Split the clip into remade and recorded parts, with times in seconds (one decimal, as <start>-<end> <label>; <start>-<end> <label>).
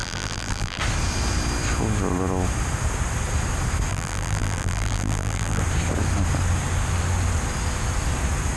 0.0-0.8 remade; 0.8-3.9 recorded; 3.9-5.6 remade; 5.6-8.6 recorded